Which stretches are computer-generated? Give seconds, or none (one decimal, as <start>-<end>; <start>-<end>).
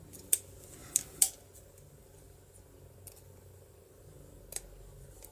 none